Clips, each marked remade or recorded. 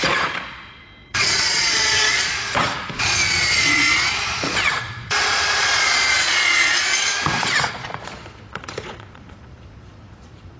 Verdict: remade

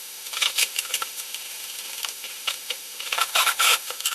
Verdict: remade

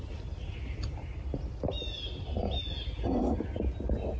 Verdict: recorded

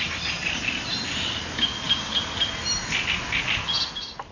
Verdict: recorded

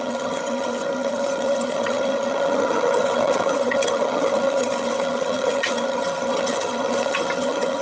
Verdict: remade